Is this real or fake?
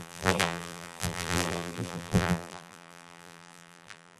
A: fake